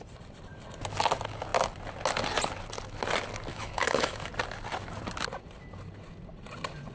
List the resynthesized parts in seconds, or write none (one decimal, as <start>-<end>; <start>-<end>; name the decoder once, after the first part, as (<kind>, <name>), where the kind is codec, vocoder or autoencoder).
3.5-4.3 (autoencoder, DAC-VAE)